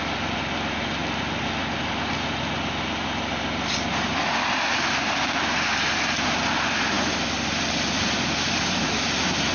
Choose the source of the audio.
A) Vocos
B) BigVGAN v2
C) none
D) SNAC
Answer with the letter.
C